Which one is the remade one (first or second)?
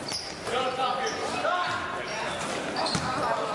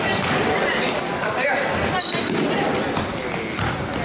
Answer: second